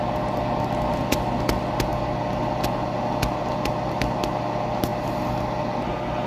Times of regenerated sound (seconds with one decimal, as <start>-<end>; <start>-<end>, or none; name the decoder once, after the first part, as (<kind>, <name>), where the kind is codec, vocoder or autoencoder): none